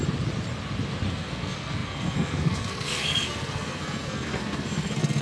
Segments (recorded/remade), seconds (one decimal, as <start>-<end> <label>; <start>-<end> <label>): 0.0-1.1 recorded; 1.1-5.2 remade